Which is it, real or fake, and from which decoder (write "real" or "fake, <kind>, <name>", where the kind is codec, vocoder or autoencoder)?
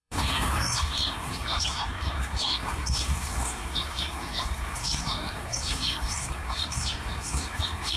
fake, codec, SNAC